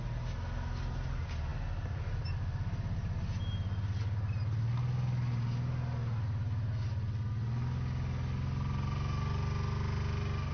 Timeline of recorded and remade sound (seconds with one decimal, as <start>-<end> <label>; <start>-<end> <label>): 0.0-10.5 recorded